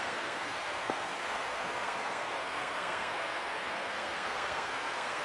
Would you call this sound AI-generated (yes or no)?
yes